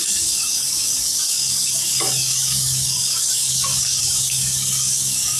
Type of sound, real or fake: fake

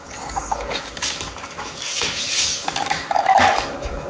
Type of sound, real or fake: fake